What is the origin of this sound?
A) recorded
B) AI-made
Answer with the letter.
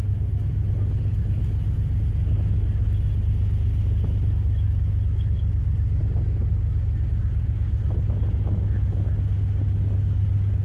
A